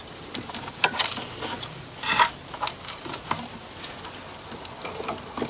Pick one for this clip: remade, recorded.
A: recorded